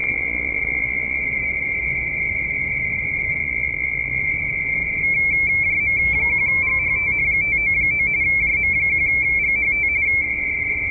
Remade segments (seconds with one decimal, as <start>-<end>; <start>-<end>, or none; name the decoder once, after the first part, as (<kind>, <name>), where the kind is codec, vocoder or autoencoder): 0.0-1.2 (vocoder, Vocos); 3.4-4.2